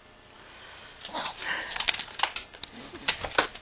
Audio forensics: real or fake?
real